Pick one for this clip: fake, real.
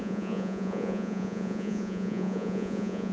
fake